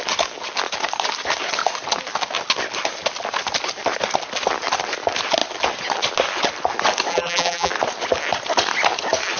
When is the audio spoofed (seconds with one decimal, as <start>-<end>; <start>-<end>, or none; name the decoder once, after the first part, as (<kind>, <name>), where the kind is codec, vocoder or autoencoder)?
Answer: 7.1-7.7 (vocoder, BigVGAN v2)